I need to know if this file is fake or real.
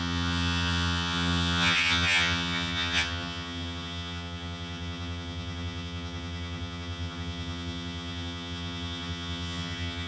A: fake